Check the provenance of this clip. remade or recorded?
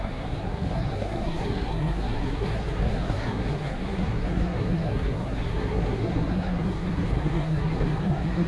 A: remade